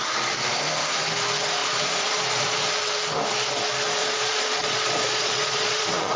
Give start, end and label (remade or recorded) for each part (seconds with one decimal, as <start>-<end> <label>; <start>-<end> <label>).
0.0-1.6 recorded; 1.6-2.8 remade; 2.8-4.0 recorded; 4.0-6.2 remade